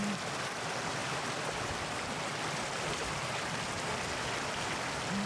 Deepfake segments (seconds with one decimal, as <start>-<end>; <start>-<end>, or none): 1.0-3.9